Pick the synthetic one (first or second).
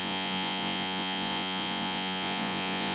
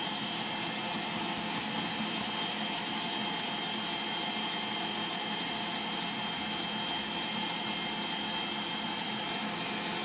first